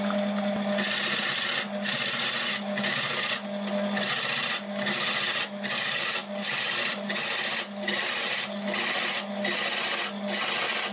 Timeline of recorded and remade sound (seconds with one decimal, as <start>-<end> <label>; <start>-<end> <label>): 0.0-10.9 recorded